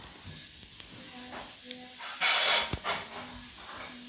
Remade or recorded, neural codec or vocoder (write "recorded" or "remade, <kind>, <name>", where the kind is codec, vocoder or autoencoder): recorded